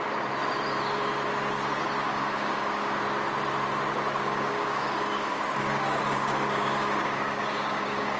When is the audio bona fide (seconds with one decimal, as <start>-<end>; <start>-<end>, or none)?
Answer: 0.0-2.1; 3.0-4.2